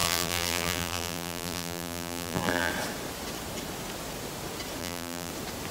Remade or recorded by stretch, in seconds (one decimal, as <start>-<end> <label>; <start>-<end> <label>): 0.0-2.7 remade; 2.7-4.8 recorded; 4.8-5.3 remade; 5.3-5.7 recorded